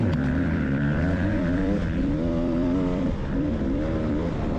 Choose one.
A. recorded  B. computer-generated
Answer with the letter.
B